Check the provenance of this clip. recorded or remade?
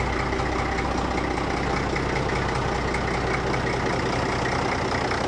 recorded